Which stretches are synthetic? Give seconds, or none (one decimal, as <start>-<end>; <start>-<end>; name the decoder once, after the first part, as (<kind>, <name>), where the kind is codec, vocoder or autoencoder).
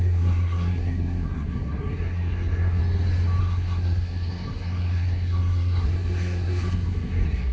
0.0-2.8 (codec, SNAC); 3.4-7.5